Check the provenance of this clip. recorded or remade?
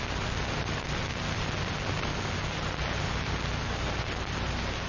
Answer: recorded